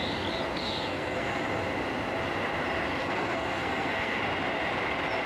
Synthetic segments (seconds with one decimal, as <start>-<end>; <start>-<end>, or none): 0.6-1.4; 3.0-4.2